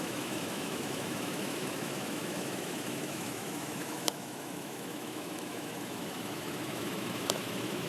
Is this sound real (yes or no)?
no